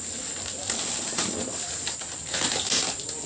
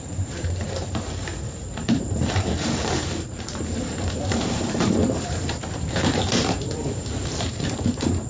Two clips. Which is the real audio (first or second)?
first